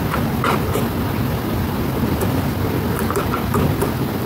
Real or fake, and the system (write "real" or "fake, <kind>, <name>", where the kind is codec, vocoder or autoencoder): real